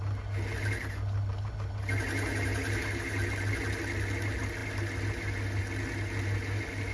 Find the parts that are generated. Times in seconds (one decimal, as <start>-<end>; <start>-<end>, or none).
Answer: none